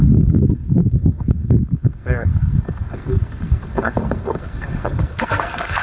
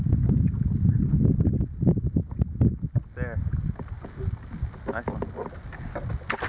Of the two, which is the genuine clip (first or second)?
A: second